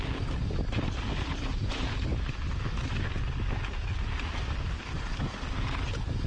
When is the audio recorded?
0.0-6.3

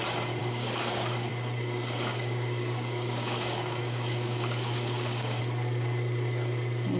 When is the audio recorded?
0.0-0.4; 1.3-2.1; 5.4-7.0

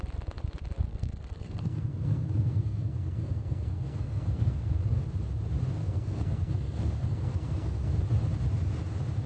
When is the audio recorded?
0.0-0.9; 5.0-5.8; 8.0-9.3

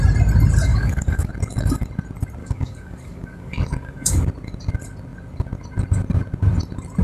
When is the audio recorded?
0.0-0.7; 1.3-2.4; 4.3-7.0

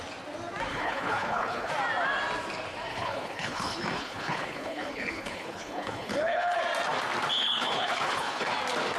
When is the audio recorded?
0.0-0.7; 1.7-2.9; 6.6-7.4; 8.5-9.0

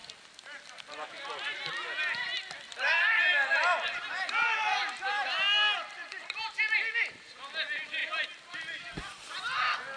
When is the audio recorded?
0.0-10.0

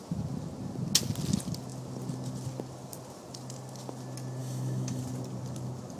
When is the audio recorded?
0.0-4.4; 5.0-6.0

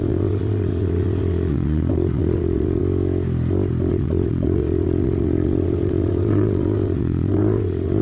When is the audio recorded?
2.8-3.9